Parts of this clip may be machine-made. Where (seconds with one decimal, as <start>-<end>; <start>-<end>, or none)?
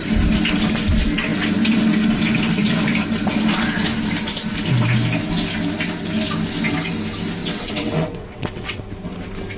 7.4-8.8